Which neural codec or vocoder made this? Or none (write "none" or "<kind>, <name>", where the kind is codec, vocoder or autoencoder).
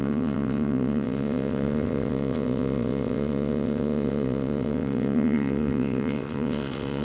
vocoder, WaveNeXt